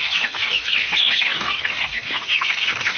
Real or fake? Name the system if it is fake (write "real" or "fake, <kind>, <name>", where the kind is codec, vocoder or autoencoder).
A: fake, codec, DAC